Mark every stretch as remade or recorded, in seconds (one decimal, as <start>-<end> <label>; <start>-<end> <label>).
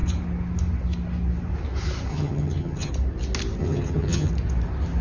0.0-2.1 recorded; 2.1-2.9 remade; 2.9-3.6 recorded; 3.6-4.3 remade; 4.3-5.0 recorded